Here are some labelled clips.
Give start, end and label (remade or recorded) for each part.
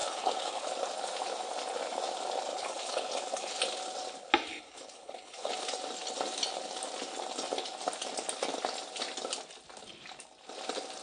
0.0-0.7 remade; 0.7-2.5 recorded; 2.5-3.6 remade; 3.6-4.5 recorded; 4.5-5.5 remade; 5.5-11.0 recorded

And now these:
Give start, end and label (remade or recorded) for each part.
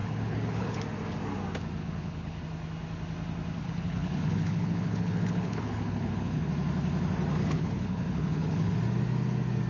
0.0-0.8 remade; 0.8-1.8 recorded; 1.8-2.4 remade; 2.4-3.6 recorded; 3.6-6.5 remade; 6.5-7.4 recorded; 7.4-8.7 remade; 8.7-9.7 recorded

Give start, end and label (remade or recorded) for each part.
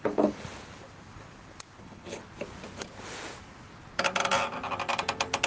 0.0-0.5 remade; 0.5-1.8 recorded; 1.8-2.2 remade; 2.2-5.5 recorded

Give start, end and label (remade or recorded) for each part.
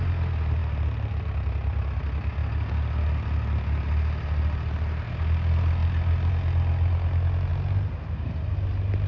0.0-9.1 recorded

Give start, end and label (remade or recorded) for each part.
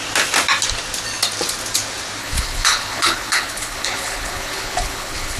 0.0-2.2 recorded; 2.2-5.4 remade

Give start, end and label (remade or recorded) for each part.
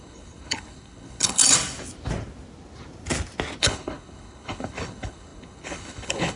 0.0-1.4 remade; 1.4-3.6 recorded; 3.6-6.4 remade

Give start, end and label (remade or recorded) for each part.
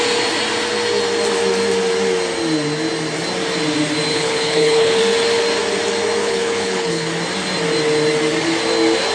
0.0-4.1 recorded; 4.1-5.0 remade; 5.0-6.2 recorded; 6.2-7.1 remade; 7.1-9.1 recorded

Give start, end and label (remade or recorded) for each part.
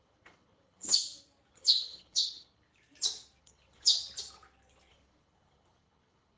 0.0-0.9 remade; 0.9-1.5 recorded; 1.5-2.7 remade; 2.7-3.4 recorded; 3.4-4.0 remade; 4.0-4.9 recorded; 4.9-6.4 remade